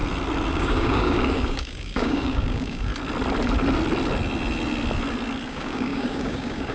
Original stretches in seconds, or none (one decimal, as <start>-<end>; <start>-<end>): 0.0-0.5; 2.9-5.5